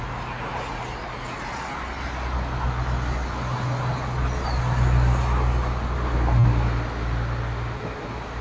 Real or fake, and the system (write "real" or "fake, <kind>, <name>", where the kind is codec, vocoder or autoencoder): real